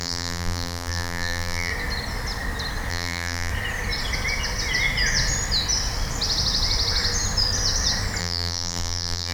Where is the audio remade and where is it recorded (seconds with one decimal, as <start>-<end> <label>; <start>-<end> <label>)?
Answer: 0.0-1.7 remade; 1.7-2.9 recorded; 2.9-3.5 remade; 3.5-8.2 recorded; 8.2-9.3 remade